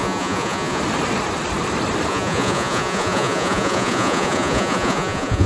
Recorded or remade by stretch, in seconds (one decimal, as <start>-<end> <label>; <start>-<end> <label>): 0.0-0.8 remade; 0.8-2.1 recorded; 2.1-5.5 remade

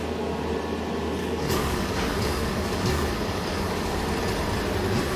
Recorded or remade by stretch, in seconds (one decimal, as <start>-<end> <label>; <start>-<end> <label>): 0.0-1.2 recorded; 1.2-4.0 remade; 4.0-5.2 recorded

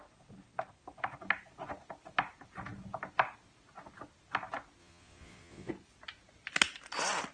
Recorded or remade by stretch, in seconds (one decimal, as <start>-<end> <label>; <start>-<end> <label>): 0.0-4.8 recorded; 4.8-5.7 remade; 5.7-7.3 recorded

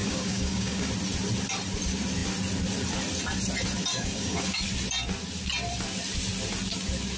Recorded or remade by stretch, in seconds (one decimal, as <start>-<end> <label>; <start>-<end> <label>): 0.0-0.9 remade; 0.9-3.9 recorded; 3.9-4.6 remade; 4.6-7.2 recorded

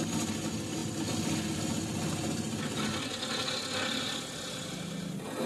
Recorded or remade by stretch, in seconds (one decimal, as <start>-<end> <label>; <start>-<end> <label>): 0.0-5.5 recorded

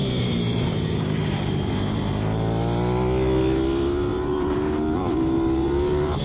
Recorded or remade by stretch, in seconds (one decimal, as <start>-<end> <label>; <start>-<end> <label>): 0.0-2.1 remade; 2.1-4.1 recorded; 4.1-6.2 remade